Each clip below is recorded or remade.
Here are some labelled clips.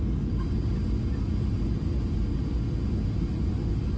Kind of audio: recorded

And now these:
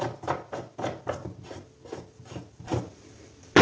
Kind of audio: recorded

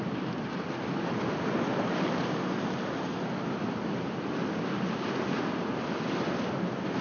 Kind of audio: recorded